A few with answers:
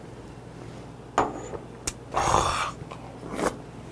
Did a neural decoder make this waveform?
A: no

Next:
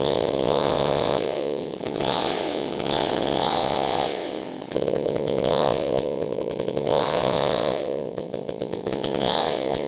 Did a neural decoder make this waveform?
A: yes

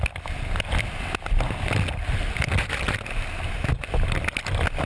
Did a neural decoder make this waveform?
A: no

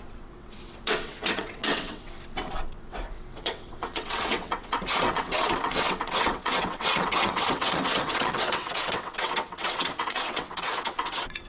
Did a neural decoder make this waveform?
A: yes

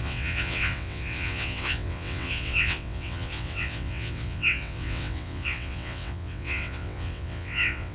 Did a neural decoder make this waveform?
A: yes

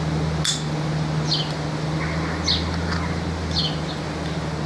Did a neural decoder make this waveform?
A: no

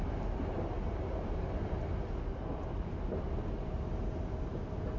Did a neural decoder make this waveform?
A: no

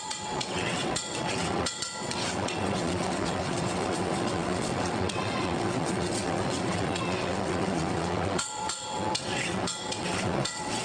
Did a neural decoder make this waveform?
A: yes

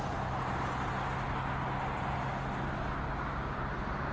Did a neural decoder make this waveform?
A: no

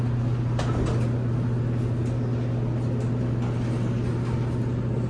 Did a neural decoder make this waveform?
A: no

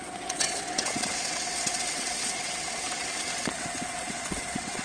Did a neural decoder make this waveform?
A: yes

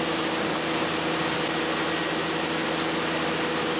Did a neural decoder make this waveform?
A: no